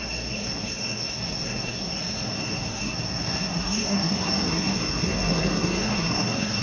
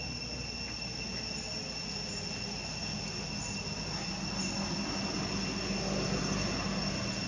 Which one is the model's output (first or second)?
first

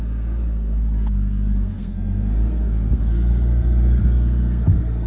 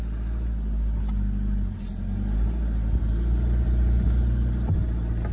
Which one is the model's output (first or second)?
first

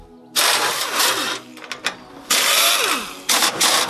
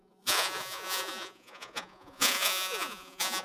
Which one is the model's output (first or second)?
second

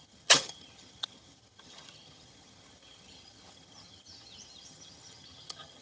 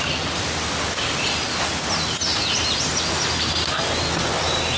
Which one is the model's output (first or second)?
first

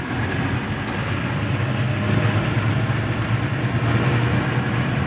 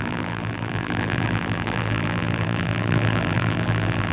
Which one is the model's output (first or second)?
second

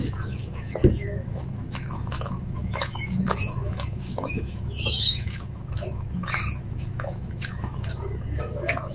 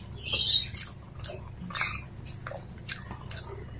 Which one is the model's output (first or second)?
first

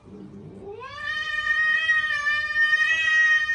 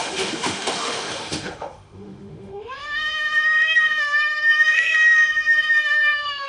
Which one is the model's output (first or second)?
second